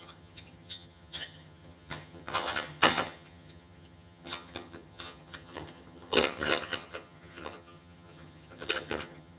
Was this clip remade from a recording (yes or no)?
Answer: yes